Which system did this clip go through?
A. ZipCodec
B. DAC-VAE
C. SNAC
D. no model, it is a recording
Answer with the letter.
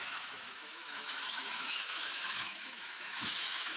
B